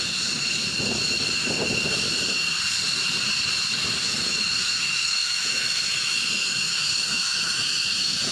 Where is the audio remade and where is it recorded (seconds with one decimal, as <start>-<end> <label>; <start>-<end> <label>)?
0.0-4.0 recorded; 4.0-8.3 remade